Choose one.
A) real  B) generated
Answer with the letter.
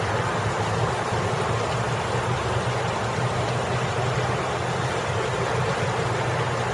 A